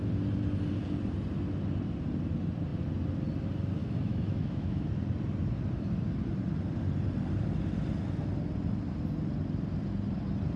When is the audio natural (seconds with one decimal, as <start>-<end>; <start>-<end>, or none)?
0.0-3.8; 4.9-10.6